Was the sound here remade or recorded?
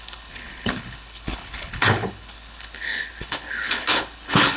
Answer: remade